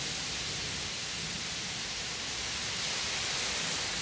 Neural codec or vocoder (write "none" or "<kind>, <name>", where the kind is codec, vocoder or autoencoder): none